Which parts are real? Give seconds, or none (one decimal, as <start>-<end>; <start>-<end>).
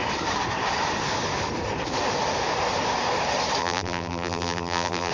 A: 0.0-3.6